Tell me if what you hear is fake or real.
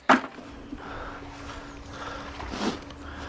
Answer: real